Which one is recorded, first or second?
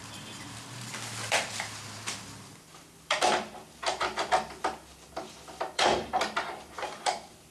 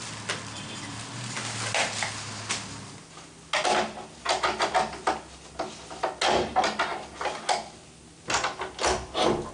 second